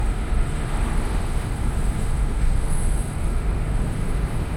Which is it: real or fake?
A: fake